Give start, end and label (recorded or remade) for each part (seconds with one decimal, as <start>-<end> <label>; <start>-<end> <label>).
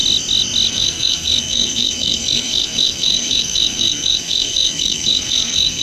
0.0-0.7 recorded; 0.7-5.8 remade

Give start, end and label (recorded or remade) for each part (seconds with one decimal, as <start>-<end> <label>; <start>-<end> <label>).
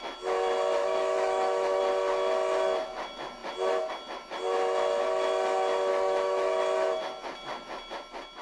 0.0-0.8 recorded; 0.8-1.8 remade; 1.8-5.9 recorded; 5.9-6.6 remade; 6.6-8.4 recorded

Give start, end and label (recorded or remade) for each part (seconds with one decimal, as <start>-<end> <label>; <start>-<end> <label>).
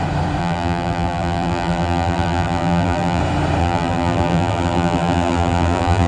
0.0-0.4 recorded; 0.4-3.2 remade; 3.2-3.6 recorded; 3.6-6.1 remade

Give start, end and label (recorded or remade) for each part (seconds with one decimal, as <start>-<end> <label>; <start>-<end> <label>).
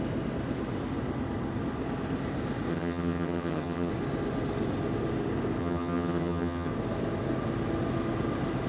0.0-2.7 recorded; 2.7-3.9 remade; 3.9-5.6 recorded; 5.6-6.7 remade; 6.7-8.7 recorded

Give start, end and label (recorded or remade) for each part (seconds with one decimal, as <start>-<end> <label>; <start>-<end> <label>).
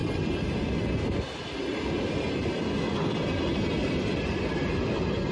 0.0-5.3 recorded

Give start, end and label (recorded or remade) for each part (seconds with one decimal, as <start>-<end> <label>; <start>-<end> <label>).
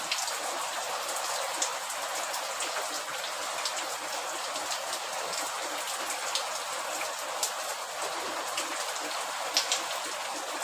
0.0-10.6 recorded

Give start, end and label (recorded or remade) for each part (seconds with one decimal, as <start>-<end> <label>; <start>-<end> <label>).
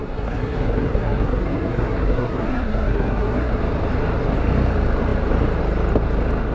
0.0-3.6 remade; 3.6-6.5 recorded